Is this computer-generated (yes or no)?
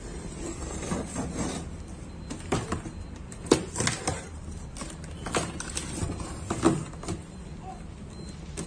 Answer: no